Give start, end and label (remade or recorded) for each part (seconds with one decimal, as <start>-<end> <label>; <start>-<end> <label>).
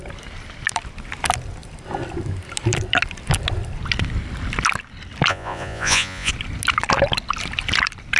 0.0-5.3 recorded; 5.3-6.3 remade; 6.3-8.2 recorded